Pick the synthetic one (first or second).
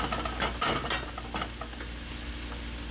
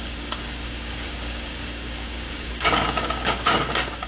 second